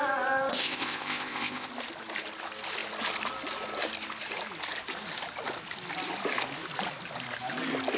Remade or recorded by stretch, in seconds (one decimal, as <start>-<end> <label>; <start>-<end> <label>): 0.0-0.5 recorded; 0.5-1.7 remade; 1.7-8.0 recorded